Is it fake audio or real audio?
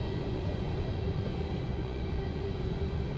fake